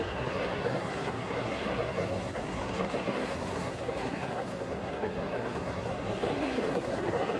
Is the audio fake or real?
fake